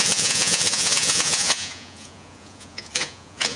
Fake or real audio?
fake